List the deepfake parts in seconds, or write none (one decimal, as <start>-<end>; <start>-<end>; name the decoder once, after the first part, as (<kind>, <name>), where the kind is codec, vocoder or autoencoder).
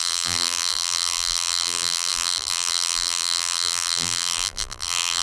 0.0-5.2 (vocoder, BigVGAN v2)